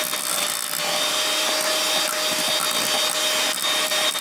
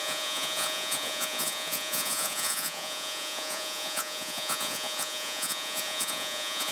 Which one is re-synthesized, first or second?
second